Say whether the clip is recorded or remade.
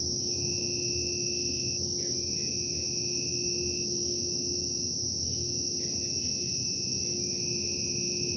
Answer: recorded